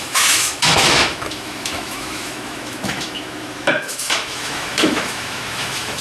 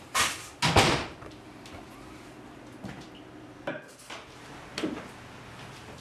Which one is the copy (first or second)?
first